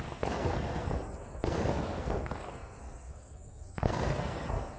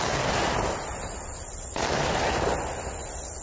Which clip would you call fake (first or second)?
first